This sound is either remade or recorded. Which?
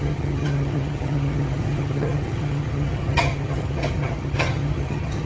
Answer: remade